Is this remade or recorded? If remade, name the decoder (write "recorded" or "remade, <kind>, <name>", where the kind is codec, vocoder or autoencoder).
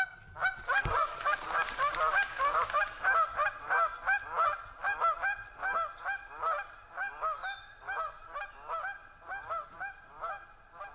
recorded